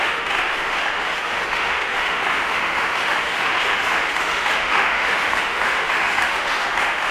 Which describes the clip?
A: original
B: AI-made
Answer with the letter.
B